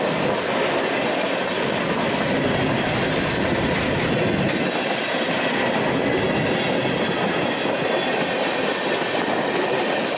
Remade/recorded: recorded